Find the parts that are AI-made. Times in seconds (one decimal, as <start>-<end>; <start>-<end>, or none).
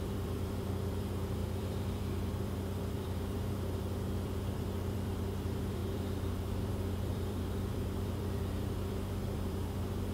0.0-10.1